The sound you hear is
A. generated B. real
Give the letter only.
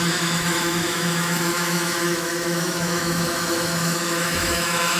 A